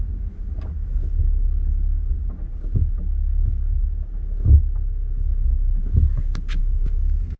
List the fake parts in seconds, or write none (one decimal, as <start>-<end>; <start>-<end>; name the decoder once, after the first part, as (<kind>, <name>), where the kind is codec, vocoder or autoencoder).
none